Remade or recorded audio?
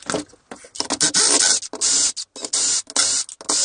recorded